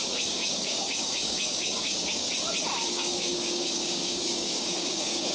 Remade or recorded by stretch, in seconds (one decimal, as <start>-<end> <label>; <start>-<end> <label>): 0.0-2.3 remade; 2.3-2.9 recorded; 2.9-5.3 remade

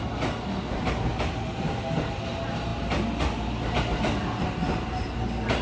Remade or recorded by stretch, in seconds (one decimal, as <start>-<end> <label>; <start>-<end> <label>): 0.0-5.6 recorded